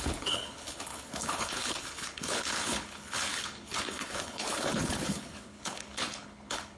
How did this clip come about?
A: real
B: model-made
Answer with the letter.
B